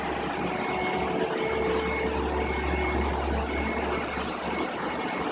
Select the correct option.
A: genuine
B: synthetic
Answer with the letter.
A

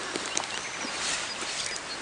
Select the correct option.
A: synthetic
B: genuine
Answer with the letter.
B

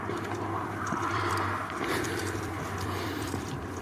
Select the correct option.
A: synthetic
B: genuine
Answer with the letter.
A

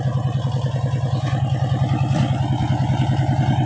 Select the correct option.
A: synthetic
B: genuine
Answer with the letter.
B